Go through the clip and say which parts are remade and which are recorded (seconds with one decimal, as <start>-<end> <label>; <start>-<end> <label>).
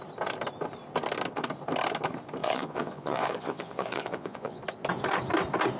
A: 0.0-2.4 recorded; 2.4-4.6 remade; 4.6-5.8 recorded